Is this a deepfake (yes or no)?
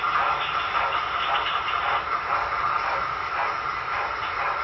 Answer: no